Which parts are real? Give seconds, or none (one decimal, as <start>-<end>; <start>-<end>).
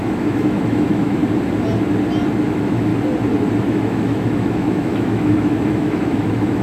1.2-2.5; 2.9-3.6